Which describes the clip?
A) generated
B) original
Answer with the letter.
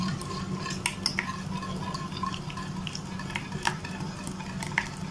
B